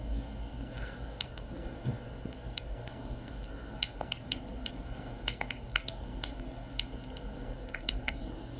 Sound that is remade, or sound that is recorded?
remade